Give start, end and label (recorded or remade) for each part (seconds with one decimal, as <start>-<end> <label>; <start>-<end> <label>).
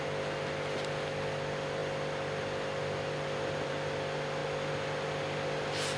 0.0-6.0 recorded